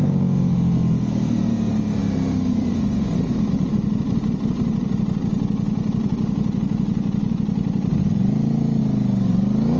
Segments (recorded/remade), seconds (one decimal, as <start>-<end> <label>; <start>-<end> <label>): 0.0-2.0 recorded; 2.0-5.2 remade; 5.2-6.1 recorded; 6.1-8.8 remade; 8.8-9.8 recorded